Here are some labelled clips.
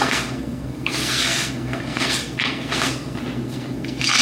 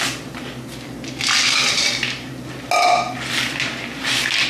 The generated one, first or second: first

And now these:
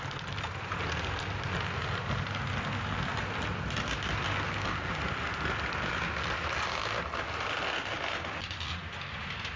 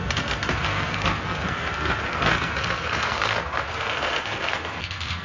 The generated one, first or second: second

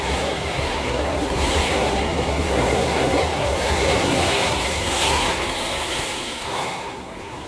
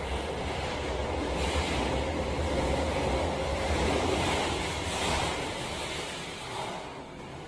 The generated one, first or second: first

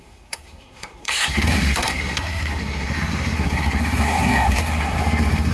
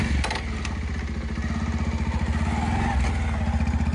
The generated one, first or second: first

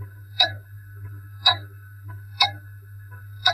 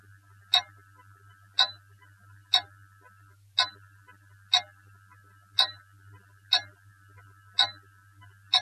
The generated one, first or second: first